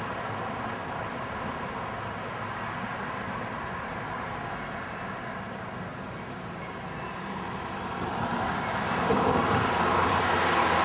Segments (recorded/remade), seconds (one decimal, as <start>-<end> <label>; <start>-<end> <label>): 0.0-5.9 recorded; 5.9-10.3 remade; 10.3-10.8 recorded